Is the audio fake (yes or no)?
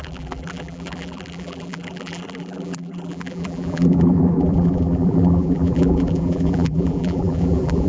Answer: yes